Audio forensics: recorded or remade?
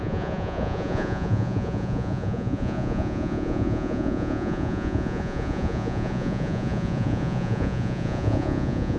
remade